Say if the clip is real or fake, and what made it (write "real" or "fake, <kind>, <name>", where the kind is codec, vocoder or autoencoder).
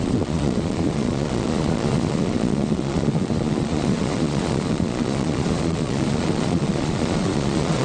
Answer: fake, vocoder, Vocos